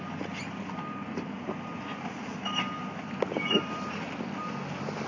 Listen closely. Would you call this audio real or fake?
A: real